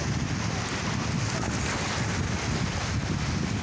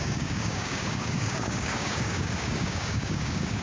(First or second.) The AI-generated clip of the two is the second